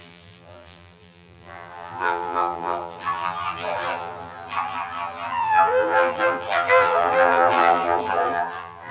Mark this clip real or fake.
fake